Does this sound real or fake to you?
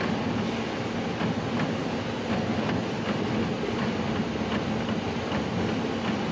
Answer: real